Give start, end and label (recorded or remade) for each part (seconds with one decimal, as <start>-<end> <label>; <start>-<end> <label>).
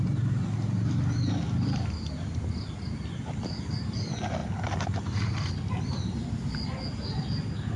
0.0-7.8 recorded